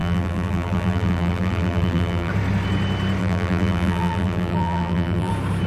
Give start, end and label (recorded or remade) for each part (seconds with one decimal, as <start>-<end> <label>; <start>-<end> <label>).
0.0-2.3 remade; 2.3-3.2 recorded; 3.2-5.3 remade; 5.3-5.7 recorded